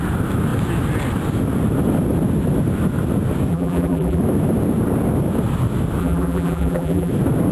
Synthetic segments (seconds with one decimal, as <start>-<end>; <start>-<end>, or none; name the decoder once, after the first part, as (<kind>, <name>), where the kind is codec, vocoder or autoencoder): 3.5-4.2 (vocoder, BigVGAN v2); 6.0-7.1